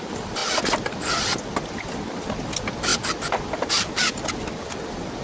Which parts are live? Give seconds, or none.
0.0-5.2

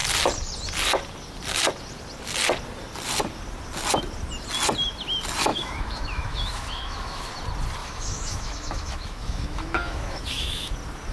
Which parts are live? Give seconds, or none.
0.0-5.5; 7.3-7.8; 10.7-11.1

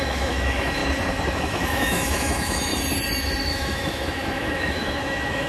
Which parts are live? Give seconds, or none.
0.8-1.3; 2.7-3.5

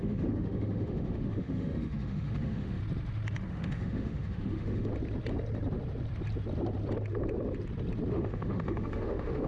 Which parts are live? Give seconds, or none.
2.8-3.5; 4.9-8.1

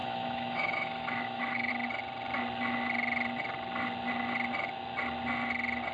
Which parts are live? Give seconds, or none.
1.7-5.9

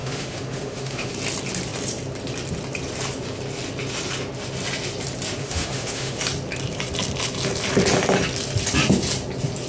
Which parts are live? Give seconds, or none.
1.1-5.4; 6.2-9.7

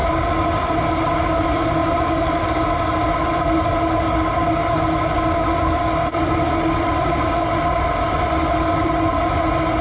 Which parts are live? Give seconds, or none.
0.0-9.8

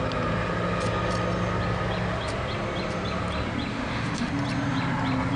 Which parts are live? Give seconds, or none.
0.0-3.7; 4.3-5.4